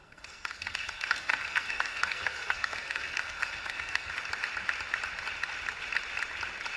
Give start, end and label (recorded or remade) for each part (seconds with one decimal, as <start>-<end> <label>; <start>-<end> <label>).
0.0-4.1 remade; 4.1-6.8 recorded